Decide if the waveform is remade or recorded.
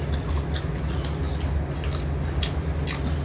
recorded